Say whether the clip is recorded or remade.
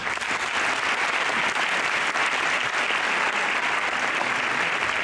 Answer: recorded